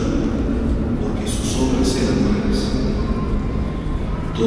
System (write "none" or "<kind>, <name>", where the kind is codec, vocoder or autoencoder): none